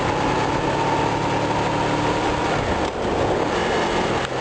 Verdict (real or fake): real